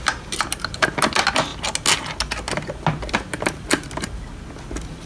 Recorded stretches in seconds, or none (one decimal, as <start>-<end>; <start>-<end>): 0.0-5.1